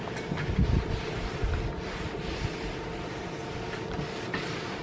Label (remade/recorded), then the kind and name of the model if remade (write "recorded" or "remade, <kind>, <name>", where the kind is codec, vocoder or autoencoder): recorded